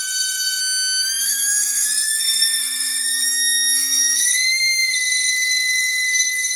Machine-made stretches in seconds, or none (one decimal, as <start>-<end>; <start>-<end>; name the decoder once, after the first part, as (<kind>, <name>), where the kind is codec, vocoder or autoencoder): 0.0-0.6 (codec, SNAC); 1.2-6.6